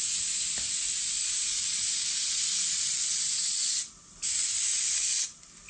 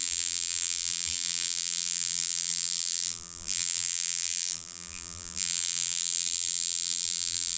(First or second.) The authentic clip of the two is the first